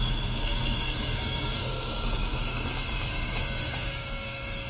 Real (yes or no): no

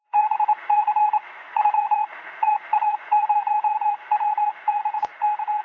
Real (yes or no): no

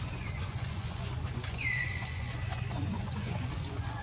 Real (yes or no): no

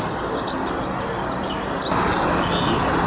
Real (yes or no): yes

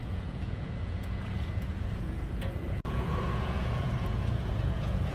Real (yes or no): no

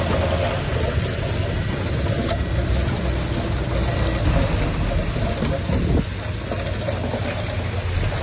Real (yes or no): yes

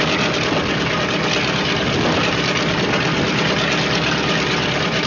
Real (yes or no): yes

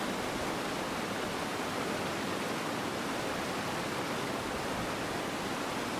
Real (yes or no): yes